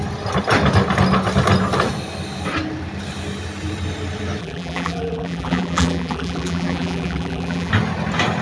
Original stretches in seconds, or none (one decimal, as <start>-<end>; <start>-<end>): 0.0-4.4; 7.7-8.4